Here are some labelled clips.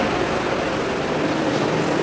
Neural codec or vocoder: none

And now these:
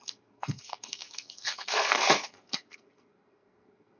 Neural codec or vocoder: codec, SNAC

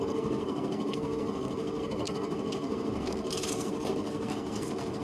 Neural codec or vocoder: codec, SNAC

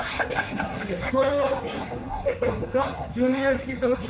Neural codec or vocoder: codec, SNAC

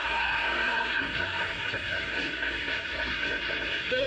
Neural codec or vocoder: codec, SNAC